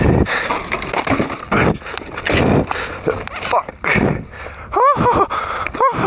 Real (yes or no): yes